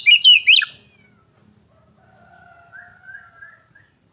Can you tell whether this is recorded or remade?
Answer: recorded